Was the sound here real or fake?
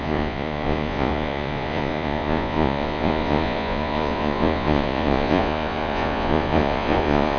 fake